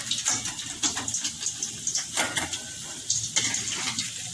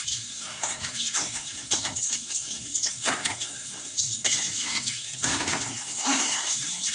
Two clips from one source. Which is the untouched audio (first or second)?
first